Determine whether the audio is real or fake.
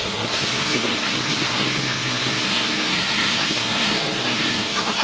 fake